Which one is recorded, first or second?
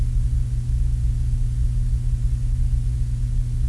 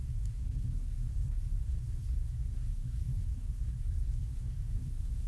first